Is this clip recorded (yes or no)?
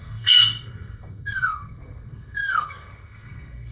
no